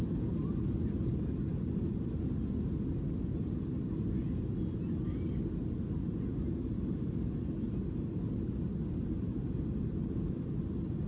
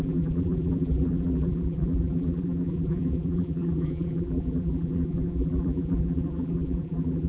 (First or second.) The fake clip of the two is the second